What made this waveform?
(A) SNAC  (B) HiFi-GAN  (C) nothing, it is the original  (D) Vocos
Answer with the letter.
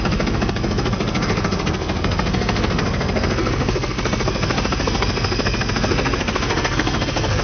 A